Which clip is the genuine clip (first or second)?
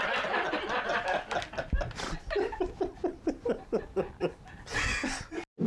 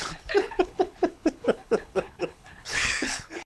first